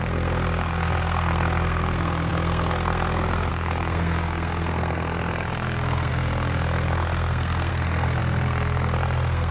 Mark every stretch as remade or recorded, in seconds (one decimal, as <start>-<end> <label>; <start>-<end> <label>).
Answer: 0.0-9.5 remade

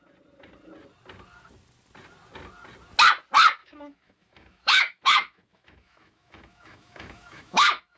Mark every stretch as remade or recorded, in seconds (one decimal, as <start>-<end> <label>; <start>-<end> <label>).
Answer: 0.0-3.6 recorded; 3.6-8.0 remade

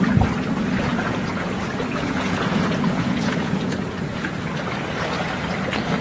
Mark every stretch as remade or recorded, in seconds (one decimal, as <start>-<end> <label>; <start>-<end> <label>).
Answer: 0.0-0.9 recorded; 0.9-4.5 remade; 4.5-6.0 recorded